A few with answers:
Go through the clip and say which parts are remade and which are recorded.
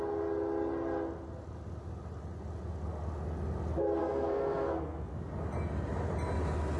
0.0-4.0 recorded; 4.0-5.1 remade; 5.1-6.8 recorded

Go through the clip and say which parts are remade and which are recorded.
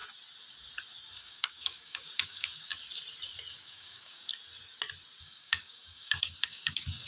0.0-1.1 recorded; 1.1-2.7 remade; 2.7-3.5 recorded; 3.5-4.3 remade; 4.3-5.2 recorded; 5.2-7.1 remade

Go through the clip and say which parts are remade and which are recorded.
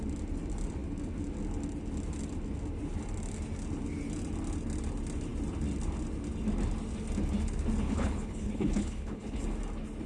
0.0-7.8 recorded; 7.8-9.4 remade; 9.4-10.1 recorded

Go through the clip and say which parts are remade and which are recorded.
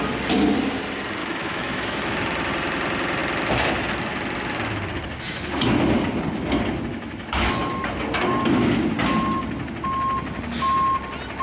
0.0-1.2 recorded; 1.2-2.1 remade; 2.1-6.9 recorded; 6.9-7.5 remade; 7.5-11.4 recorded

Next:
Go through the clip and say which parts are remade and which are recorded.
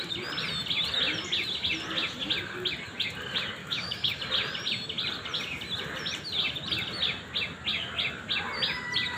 0.0-3.6 recorded; 3.6-4.2 remade; 4.2-9.2 recorded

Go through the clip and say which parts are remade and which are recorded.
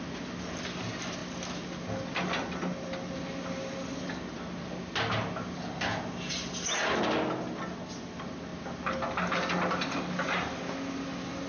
0.0-11.5 recorded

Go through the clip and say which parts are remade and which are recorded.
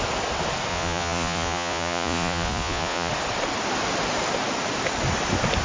0.0-0.7 recorded; 0.7-3.1 remade; 3.1-5.6 recorded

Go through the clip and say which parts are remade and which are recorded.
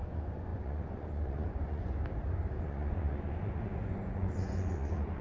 0.0-2.0 remade; 2.0-2.6 recorded; 2.6-5.2 remade